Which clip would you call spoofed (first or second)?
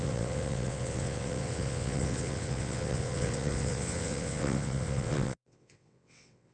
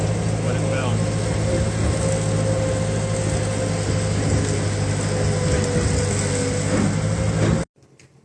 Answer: first